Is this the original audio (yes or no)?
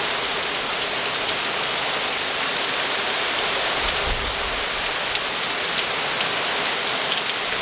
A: yes